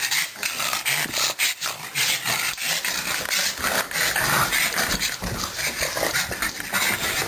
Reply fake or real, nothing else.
real